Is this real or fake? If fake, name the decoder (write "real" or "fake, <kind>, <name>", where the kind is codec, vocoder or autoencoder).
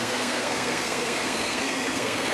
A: fake, codec, SNAC